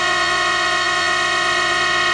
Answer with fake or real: fake